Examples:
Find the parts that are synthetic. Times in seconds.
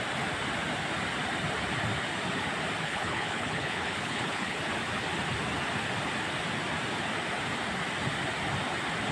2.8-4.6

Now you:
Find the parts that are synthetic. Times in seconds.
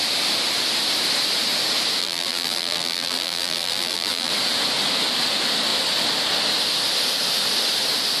2.0-4.3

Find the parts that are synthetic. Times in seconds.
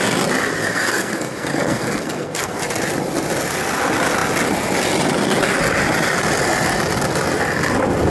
0.6-2.6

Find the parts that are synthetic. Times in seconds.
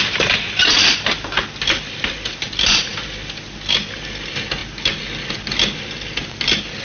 none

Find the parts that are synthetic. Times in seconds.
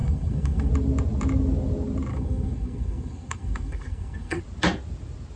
0.0-0.7; 2.1-4.4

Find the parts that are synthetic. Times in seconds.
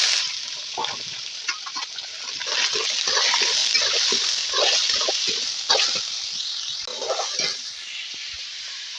none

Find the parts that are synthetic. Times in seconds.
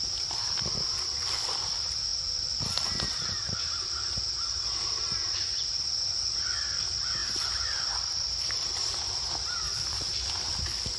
0.0-11.0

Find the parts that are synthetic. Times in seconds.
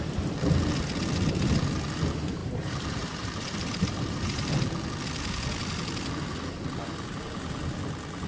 2.4-4.5